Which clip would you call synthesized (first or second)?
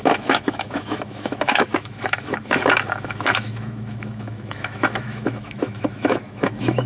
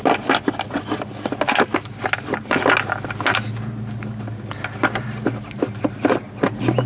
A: first